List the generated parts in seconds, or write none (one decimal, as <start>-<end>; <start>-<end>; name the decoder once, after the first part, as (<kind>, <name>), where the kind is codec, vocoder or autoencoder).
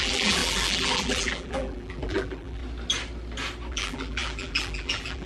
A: 0.0-2.6 (vocoder, BigVGAN v2); 3.7-5.3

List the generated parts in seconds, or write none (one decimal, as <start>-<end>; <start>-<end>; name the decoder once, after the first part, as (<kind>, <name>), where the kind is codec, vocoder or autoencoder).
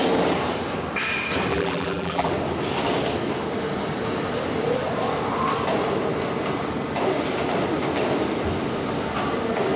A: 1.5-2.3 (vocoder, BigVGAN v2)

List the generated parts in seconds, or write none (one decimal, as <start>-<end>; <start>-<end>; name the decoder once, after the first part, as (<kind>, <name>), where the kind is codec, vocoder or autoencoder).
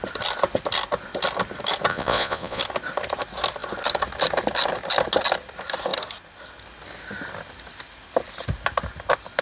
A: 1.9-2.6 (vocoder, Vocos)